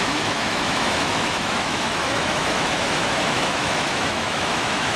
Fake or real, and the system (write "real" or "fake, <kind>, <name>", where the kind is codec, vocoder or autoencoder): fake, autoencoder, DAC-VAE